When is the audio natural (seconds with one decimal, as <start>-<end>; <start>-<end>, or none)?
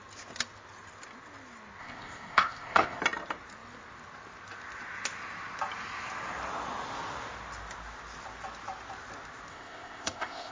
0.0-1.8; 3.0-9.5